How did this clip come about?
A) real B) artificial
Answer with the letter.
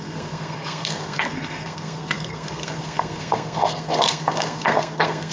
B